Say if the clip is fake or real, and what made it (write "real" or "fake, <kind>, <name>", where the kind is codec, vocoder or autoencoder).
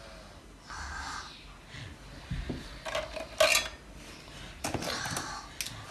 real